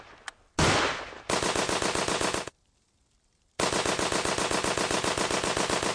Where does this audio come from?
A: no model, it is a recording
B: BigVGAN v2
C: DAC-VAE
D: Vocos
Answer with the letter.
A